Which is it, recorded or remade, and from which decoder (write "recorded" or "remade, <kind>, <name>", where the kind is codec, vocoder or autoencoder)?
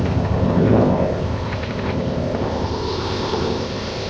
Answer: remade, codec, ZipCodec